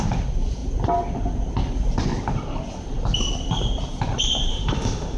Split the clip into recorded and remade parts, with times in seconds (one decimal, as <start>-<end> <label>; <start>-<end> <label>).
0.0-4.5 recorded; 4.5-5.2 remade